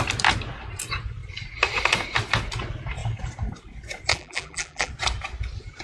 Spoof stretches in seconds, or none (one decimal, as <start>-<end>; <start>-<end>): 4.1-4.9